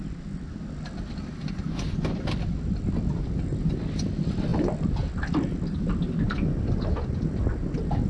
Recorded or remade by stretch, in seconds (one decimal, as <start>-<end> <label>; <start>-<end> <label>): 0.0-8.1 recorded